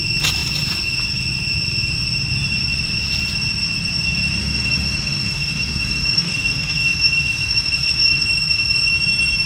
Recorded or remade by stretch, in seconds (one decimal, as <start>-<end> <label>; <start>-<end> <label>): 0.0-4.4 recorded; 4.4-8.9 remade; 8.9-9.5 recorded